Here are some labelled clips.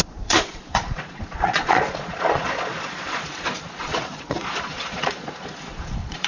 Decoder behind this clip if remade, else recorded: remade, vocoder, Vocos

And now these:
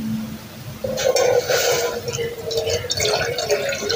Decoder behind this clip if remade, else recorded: recorded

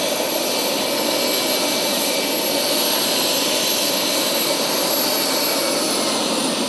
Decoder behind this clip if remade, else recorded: recorded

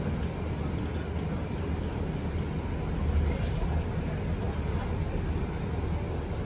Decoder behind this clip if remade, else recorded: recorded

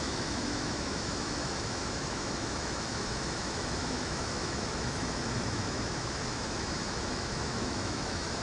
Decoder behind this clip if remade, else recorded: remade, autoencoder, DAC-VAE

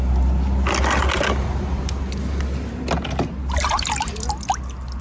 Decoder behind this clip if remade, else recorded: recorded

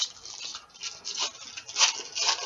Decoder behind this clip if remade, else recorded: recorded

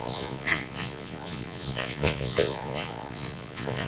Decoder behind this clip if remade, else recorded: remade, vocoder, Vocos